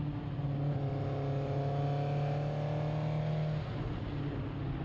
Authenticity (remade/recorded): recorded